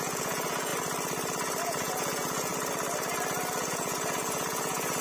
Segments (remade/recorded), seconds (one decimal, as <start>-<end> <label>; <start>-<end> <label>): 0.0-0.7 remade; 0.7-1.6 recorded; 1.6-2.5 remade; 2.5-3.7 recorded; 3.7-5.0 remade